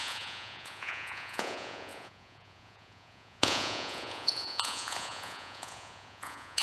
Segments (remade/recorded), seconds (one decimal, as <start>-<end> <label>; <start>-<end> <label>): 0.0-6.6 remade